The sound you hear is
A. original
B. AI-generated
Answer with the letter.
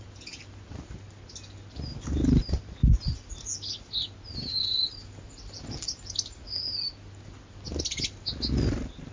A